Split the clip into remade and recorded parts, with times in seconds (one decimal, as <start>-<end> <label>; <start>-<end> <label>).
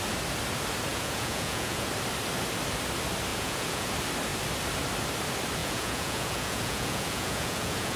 0.0-0.9 recorded; 0.9-1.9 remade; 1.9-3.3 recorded; 3.3-3.9 remade; 3.9-5.6 recorded; 5.6-8.0 remade